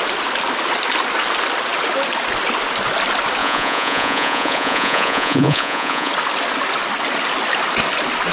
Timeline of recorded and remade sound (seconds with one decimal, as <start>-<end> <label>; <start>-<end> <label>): 0.0-3.4 recorded; 3.4-6.1 remade; 6.1-8.3 recorded

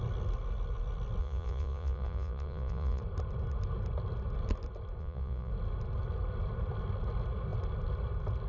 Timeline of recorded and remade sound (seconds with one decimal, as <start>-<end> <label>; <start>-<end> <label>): 0.0-1.2 recorded; 1.2-3.0 remade; 3.0-5.0 recorded; 5.0-5.5 remade; 5.5-8.5 recorded

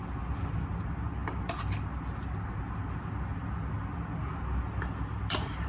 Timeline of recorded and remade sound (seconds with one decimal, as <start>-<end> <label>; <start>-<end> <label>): 0.0-5.7 recorded

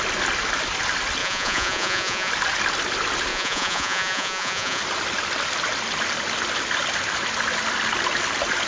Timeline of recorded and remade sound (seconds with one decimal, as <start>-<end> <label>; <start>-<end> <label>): 0.0-1.2 recorded; 1.2-2.3 remade; 2.3-3.3 recorded; 3.3-4.8 remade; 4.8-8.7 recorded

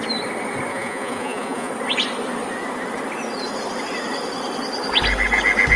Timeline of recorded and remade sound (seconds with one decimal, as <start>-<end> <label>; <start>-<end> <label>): 0.0-0.7 recorded; 0.7-1.7 remade; 1.7-5.8 recorded

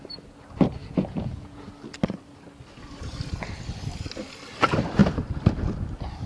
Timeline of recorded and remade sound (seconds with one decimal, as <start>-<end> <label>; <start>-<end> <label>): 0.0-0.8 recorded; 0.8-1.7 remade; 1.7-6.3 recorded

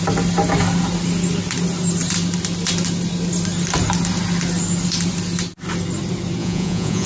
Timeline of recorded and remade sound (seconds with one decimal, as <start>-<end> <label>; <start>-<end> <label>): 0.0-6.4 recorded; 6.4-7.1 remade

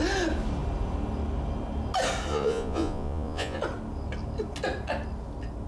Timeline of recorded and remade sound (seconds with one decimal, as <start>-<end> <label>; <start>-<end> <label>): 0.0-2.3 recorded; 2.3-3.6 remade; 3.6-5.7 recorded